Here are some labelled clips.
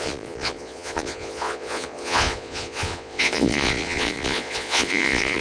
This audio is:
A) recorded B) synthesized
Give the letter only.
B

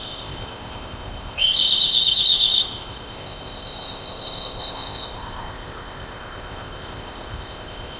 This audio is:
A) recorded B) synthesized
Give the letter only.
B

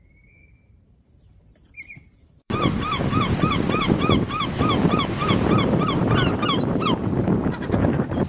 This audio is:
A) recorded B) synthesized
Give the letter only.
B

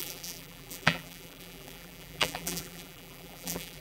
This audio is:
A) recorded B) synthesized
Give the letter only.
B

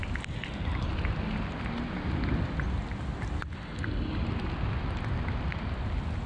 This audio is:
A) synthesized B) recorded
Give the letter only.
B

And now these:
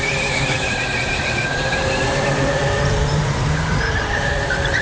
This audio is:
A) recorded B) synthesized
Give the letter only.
B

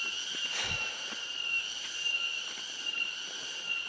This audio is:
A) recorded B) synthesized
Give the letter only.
A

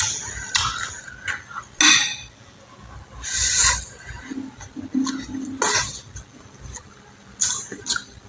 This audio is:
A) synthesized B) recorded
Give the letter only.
B